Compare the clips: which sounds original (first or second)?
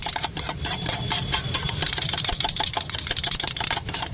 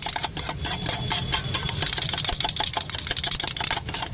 second